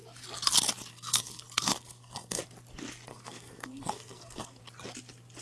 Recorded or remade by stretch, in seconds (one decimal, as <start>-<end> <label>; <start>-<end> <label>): 0.0-0.9 recorded; 0.9-2.4 remade; 2.4-3.1 recorded; 3.1-4.6 remade; 4.6-5.4 recorded